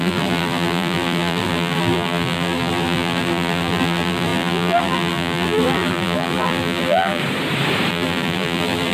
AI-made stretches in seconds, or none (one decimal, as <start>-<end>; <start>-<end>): 0.0-7.2; 7.9-8.9